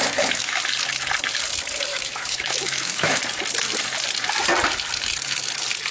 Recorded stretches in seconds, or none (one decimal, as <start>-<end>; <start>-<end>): 0.6-1.9; 3.2-5.9

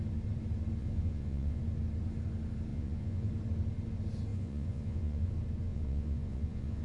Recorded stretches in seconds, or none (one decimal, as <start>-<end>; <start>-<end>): 0.0-0.8; 1.6-2.7; 3.3-4.3; 5.3-5.7

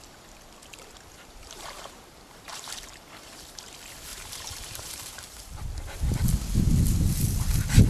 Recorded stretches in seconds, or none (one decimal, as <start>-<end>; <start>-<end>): 0.0-1.4; 2.7-4.1; 5.6-7.9

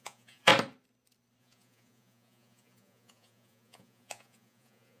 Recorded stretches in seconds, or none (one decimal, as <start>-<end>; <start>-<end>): 0.5-1.4

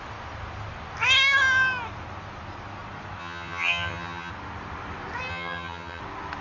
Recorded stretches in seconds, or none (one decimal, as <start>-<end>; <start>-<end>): 0.0-3.2; 4.3-5.3; 6.0-6.4

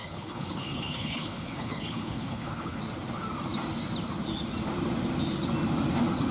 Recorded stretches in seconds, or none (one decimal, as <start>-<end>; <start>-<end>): 2.8-6.3

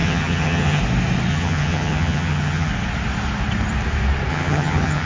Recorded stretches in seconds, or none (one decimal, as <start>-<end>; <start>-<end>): 0.8-1.3; 2.7-4.3